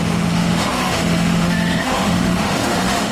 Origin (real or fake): fake